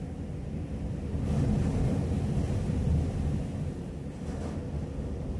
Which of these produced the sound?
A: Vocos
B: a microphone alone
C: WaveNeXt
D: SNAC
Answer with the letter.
B